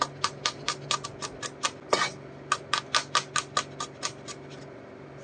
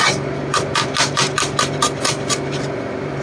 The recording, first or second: first